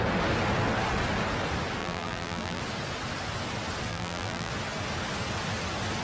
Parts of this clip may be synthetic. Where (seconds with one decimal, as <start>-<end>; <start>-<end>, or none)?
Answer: 1.8-2.6; 3.9-4.5